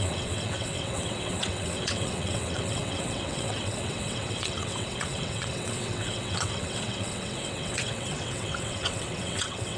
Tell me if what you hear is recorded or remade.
remade